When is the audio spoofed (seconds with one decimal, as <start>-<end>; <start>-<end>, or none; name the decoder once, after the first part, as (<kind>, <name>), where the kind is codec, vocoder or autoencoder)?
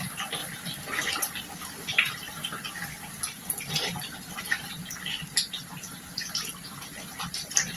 0.0-7.8 (vocoder, BigVGAN v2)